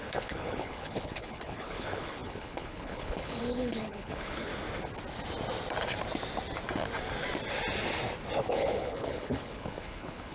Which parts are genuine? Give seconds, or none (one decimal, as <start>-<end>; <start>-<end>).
4.5-8.5